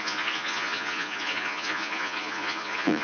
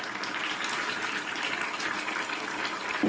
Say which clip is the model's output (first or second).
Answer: first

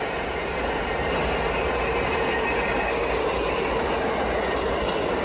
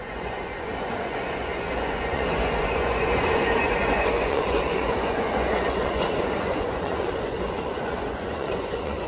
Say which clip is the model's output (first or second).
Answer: second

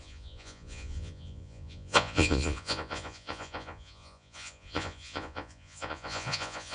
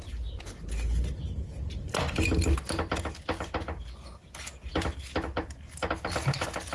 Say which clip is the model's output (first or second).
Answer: first